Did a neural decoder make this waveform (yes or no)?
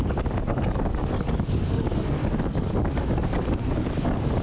yes